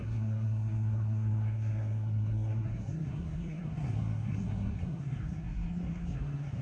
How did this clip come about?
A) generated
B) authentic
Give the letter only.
A